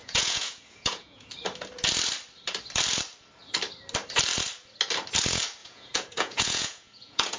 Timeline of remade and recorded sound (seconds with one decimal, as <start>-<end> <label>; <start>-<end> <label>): 0.0-1.3 remade; 1.3-5.6 recorded; 5.6-7.4 remade